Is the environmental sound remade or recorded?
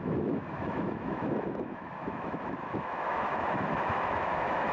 remade